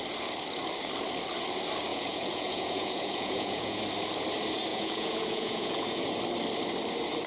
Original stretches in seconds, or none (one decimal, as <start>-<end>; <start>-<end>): 0.0-1.9; 3.8-4.7; 6.0-7.3